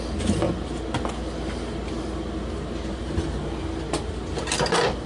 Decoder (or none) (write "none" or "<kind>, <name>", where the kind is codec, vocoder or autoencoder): none